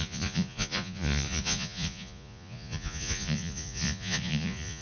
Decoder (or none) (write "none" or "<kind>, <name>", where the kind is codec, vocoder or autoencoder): vocoder, Vocos